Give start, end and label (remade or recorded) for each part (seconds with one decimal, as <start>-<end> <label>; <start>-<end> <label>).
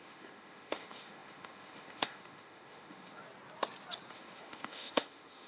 0.0-3.2 remade; 3.2-4.1 recorded; 4.1-5.5 remade